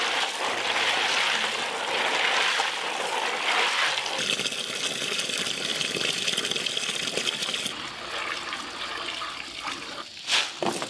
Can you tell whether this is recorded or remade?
recorded